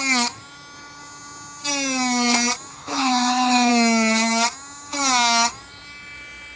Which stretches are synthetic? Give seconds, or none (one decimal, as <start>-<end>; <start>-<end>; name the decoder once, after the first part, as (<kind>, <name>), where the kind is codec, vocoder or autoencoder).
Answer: 2.7-3.7 (codec, HILCodec)